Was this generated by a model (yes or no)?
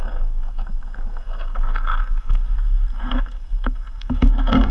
yes